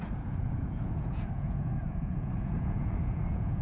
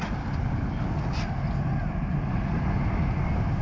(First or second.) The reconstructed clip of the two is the first